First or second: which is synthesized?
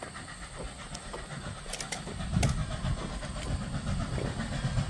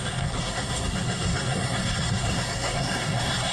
second